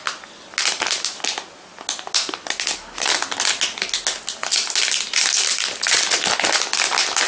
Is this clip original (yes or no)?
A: yes